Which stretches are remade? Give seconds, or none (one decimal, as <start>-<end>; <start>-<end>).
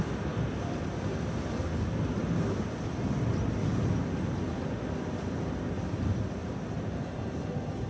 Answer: 0.0-1.6; 3.3-3.7; 5.8-7.9